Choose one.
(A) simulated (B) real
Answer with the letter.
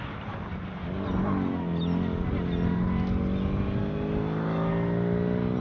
B